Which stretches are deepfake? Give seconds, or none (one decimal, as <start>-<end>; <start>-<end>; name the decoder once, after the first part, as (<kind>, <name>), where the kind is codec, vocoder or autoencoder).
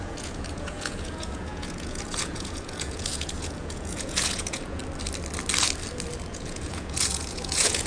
0.0-4.8 (vocoder, Vocos); 6.3-7.9